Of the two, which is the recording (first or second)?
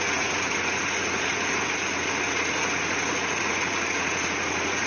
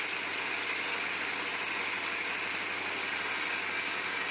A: second